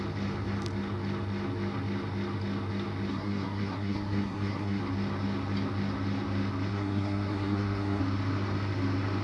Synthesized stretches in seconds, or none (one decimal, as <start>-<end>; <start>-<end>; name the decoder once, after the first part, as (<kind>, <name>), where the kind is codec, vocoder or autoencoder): 3.1-4.8 (codec, SNAC); 6.7-8.0